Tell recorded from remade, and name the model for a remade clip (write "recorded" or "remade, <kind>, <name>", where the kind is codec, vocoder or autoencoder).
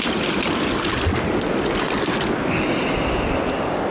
recorded